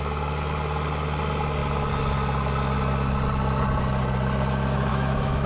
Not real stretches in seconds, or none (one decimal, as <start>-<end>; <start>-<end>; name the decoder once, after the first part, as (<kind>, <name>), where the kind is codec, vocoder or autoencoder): 4.9-5.5 (autoencoder, DAC-VAE)